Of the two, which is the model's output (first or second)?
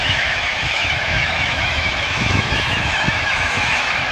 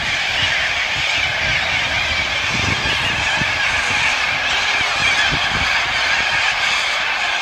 first